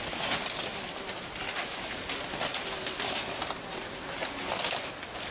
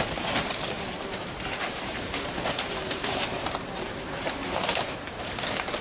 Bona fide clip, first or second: first